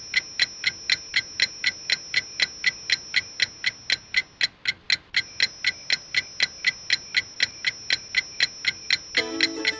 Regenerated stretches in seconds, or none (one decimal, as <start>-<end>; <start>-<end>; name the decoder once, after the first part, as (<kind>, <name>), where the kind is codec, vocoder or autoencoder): none